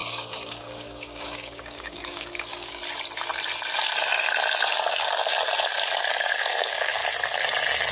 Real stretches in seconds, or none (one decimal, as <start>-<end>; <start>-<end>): 2.8-6.1; 7.0-7.9